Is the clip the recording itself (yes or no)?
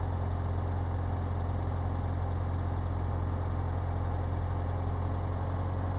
yes